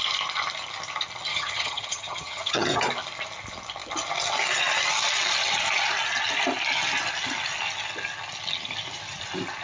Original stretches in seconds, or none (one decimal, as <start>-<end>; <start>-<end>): 0.0-1.3; 2.7-9.6